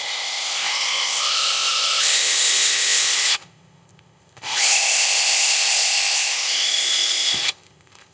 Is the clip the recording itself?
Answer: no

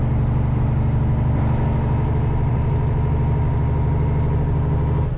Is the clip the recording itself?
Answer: yes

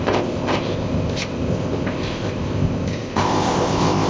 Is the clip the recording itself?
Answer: no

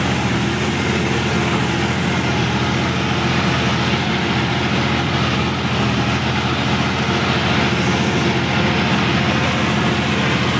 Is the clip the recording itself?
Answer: yes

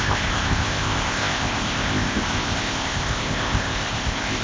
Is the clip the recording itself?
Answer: no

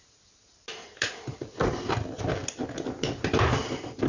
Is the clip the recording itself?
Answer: yes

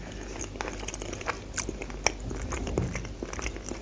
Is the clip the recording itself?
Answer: yes